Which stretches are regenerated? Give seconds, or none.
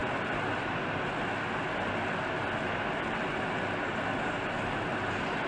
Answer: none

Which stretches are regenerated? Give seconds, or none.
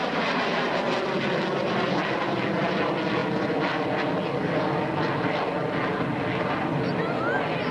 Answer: none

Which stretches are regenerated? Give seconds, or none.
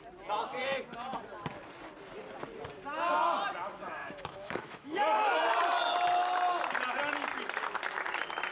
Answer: 4.0-5.4 (autoencoder, DAC-VAE)